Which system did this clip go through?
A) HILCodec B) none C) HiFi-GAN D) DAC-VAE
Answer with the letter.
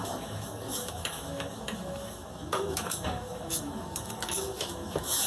D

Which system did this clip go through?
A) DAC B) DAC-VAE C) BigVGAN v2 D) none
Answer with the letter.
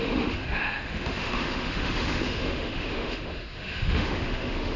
B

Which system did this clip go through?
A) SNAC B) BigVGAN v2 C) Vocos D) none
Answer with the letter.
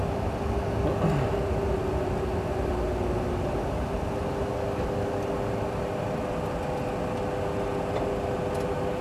D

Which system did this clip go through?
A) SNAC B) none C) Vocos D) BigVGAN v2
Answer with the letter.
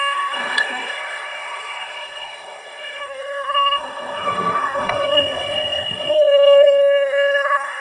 A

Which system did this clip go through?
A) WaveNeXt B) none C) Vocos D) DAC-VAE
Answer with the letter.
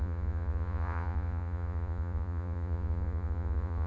C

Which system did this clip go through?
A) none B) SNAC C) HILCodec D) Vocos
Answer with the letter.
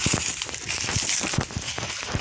A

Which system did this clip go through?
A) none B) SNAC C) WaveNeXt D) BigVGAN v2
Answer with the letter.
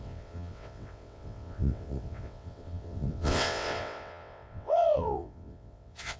C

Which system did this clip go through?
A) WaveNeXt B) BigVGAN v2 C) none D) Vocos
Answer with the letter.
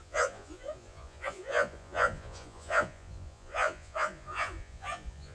D